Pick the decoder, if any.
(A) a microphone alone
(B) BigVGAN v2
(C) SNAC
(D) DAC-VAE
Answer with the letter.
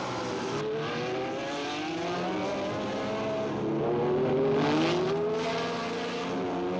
A